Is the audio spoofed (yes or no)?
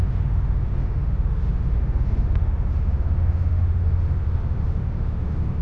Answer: yes